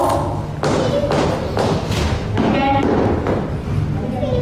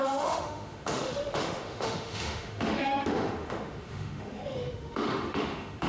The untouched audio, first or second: first